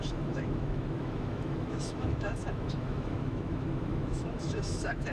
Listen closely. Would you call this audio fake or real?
fake